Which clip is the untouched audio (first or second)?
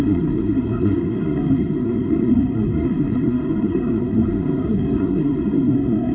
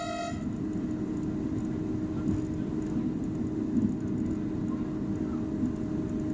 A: second